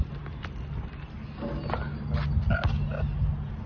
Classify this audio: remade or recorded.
recorded